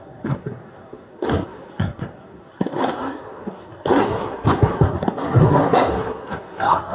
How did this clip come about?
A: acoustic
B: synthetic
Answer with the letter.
B